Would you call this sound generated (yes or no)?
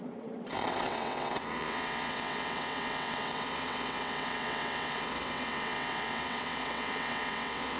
yes